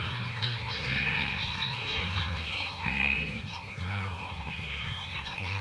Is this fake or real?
fake